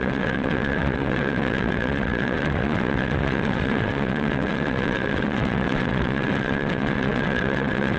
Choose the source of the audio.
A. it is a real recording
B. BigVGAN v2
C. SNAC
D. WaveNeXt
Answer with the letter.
D